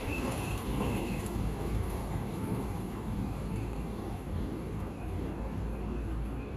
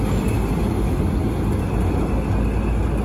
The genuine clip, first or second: second